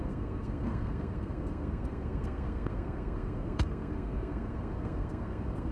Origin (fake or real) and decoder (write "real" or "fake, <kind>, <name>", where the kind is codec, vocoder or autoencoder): fake, codec, SNAC